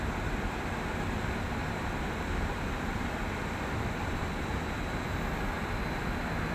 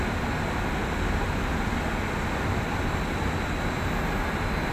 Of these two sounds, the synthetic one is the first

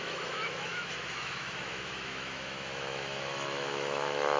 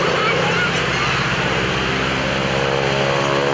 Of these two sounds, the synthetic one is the first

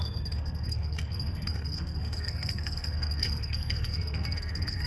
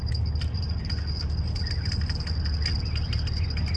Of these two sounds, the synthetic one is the first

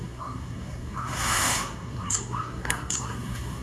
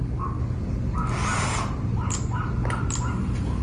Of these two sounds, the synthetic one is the first